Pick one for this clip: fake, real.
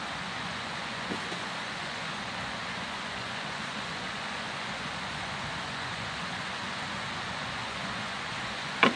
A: fake